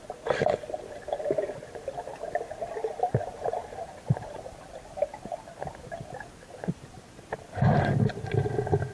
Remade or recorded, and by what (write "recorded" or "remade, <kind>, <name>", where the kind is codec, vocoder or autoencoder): recorded